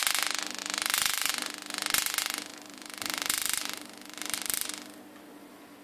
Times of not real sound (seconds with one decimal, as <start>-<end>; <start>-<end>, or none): 0.6-1.3; 2.5-4.7